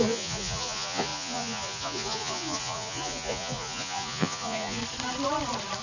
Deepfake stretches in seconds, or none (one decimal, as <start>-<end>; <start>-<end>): 0.0-4.8